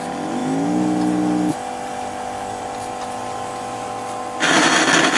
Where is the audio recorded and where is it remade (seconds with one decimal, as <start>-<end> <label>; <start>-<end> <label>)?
0.0-5.2 recorded